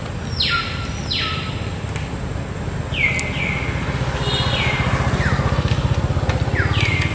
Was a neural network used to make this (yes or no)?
no